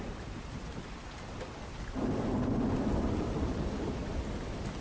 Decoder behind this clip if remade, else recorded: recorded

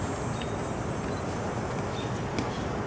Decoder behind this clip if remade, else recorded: recorded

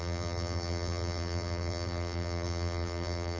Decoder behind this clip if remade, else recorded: remade, vocoder, BigVGAN v2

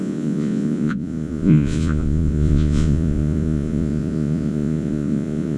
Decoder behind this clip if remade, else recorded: remade, vocoder, Vocos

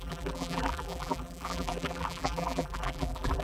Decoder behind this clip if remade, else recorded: remade, vocoder, BigVGAN v2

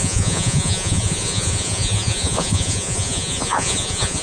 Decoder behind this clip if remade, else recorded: remade, vocoder, Vocos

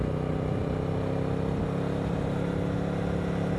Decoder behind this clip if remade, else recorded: recorded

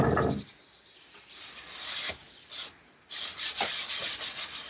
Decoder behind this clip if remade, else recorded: recorded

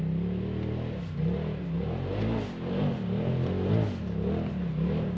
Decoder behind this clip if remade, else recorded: recorded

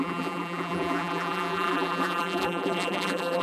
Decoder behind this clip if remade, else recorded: remade, vocoder, BigVGAN v2